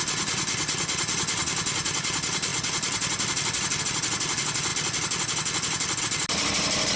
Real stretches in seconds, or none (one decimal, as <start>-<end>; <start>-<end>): 0.0-7.0